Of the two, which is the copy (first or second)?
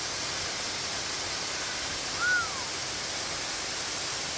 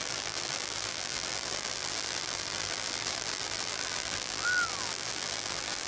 second